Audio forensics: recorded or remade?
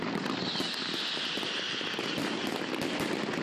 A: recorded